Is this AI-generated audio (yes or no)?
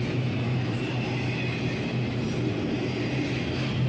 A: no